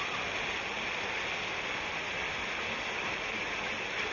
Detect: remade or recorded recorded